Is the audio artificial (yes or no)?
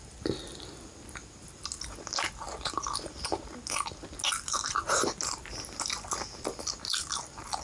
no